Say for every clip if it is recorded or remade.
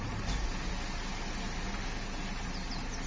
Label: recorded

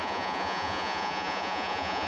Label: remade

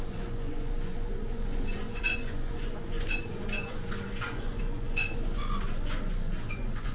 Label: remade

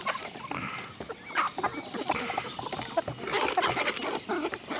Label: recorded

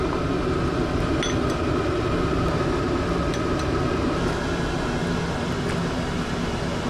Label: recorded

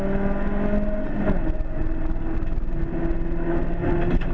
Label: recorded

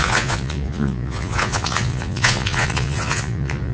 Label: remade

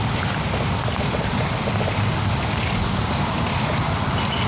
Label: recorded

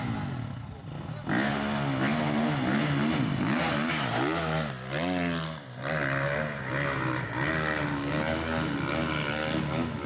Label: recorded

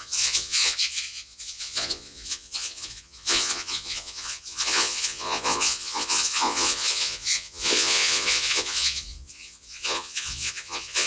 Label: remade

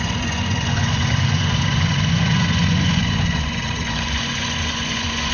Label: remade